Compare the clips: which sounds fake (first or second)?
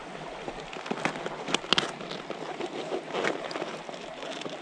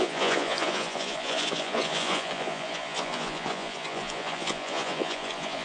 second